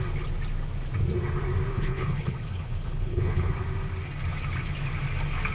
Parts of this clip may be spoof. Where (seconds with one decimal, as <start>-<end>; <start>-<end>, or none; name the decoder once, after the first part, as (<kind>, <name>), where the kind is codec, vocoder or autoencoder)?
1.7-3.5 (codec, HILCodec)